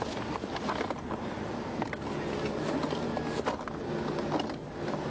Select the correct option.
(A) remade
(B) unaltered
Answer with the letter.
B